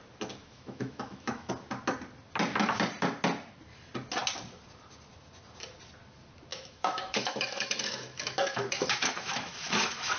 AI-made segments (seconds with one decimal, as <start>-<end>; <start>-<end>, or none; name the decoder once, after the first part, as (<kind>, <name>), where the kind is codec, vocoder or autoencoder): 0.4-1.5 (autoencoder, DAC-VAE); 6.5-10.2

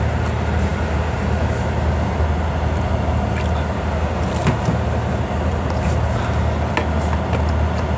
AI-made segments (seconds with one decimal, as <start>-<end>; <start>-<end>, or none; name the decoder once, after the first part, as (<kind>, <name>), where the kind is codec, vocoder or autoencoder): none

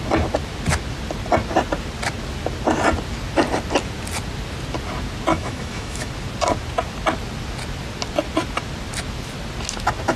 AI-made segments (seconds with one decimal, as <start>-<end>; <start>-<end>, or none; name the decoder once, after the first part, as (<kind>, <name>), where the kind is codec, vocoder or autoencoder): 5.3-6.1 (autoencoder, DAC-VAE)

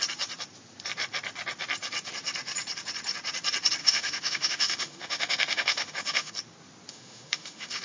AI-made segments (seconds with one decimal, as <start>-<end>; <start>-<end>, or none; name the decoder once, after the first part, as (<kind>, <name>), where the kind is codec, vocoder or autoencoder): 3.8-6.3 (autoencoder, DAC-VAE); 6.9-7.8

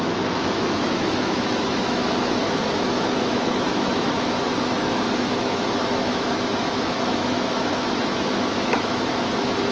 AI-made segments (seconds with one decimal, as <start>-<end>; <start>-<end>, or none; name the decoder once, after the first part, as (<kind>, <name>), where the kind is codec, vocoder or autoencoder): 0.0-9.7 (autoencoder, DAC-VAE)

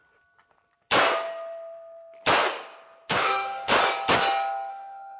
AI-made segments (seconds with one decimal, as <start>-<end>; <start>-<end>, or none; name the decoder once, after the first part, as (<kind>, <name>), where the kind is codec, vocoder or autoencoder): 3.1-3.7 (autoencoder, DAC-VAE); 4.7-5.2

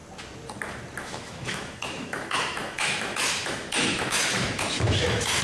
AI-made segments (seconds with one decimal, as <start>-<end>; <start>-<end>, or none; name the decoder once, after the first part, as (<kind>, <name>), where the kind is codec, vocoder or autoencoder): 1.0-5.4 (autoencoder, DAC-VAE)

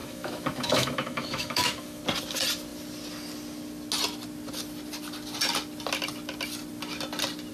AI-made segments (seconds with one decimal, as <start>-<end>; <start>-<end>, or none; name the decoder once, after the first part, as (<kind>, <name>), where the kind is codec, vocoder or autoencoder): 0.0-2.0 (autoencoder, DAC-VAE)